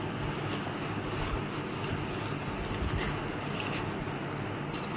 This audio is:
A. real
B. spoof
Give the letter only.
A